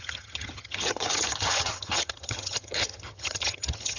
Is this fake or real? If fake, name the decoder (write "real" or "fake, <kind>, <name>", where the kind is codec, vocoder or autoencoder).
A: fake, vocoder, HiFi-GAN